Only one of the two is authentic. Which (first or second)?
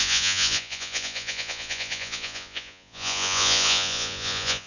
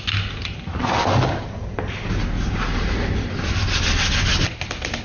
second